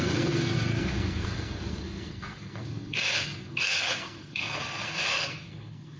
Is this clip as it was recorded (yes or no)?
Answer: no